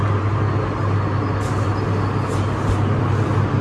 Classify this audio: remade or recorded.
recorded